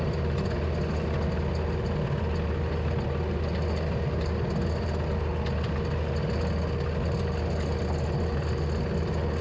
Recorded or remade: recorded